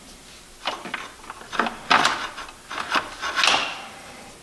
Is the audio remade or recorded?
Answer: recorded